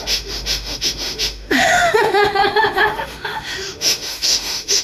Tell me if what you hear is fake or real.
fake